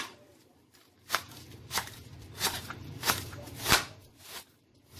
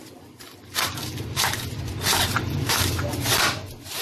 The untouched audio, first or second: second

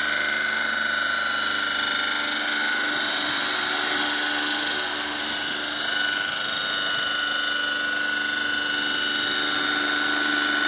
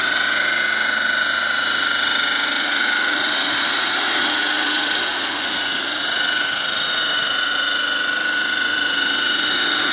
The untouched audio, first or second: first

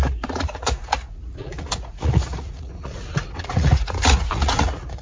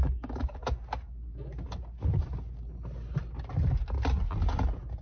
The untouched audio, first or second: second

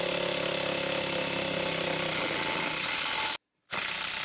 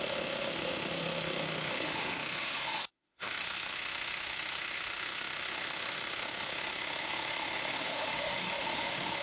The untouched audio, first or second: first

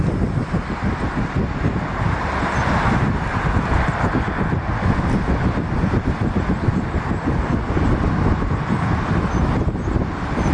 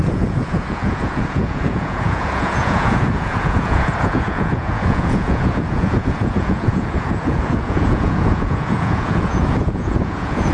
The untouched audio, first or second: first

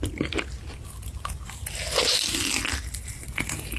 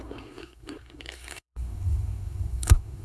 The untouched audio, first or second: first